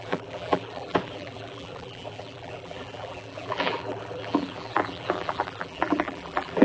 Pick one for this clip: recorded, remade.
remade